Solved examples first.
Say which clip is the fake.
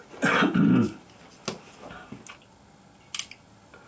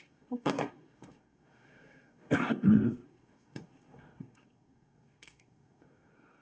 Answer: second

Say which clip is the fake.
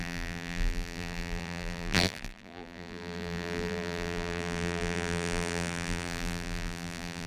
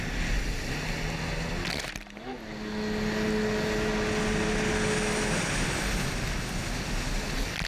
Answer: first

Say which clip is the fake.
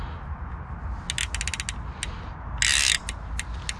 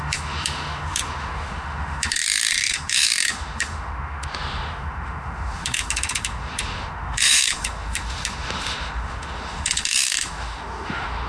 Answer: second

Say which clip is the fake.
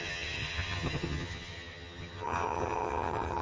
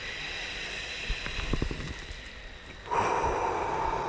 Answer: first